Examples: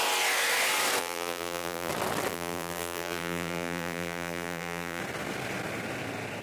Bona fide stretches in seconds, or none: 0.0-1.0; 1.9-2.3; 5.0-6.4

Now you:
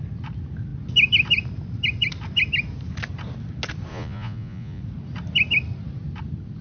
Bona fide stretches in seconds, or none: 0.0-3.9; 4.8-6.6

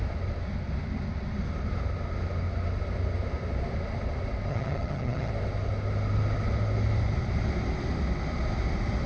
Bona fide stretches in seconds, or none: 0.0-4.5; 5.3-9.1

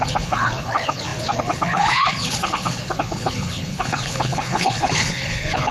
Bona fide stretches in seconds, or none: none

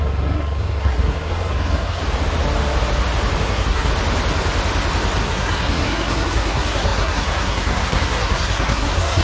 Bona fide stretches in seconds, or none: 2.0-3.4; 3.9-5.2

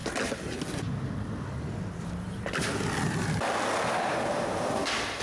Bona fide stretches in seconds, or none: 0.0-5.2

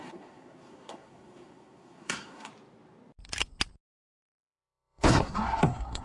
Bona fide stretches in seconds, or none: 2.5-4.0

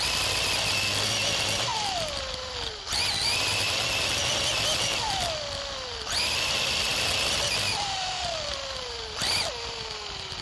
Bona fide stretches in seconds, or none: 0.0-10.4